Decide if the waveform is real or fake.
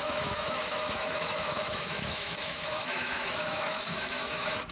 fake